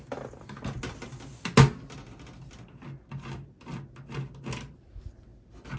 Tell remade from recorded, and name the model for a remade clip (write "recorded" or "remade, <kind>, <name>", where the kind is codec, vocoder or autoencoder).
recorded